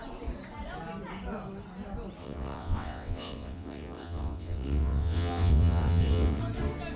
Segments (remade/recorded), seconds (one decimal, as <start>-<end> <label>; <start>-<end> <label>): 0.0-2.2 recorded; 2.2-6.4 remade; 6.4-7.0 recorded